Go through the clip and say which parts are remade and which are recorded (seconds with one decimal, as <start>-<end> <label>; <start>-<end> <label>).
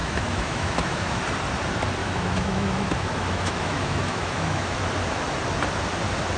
0.0-1.2 remade; 1.2-2.0 recorded; 2.0-4.8 remade; 4.8-6.4 recorded